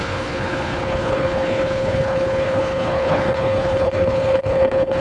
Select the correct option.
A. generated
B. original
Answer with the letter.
A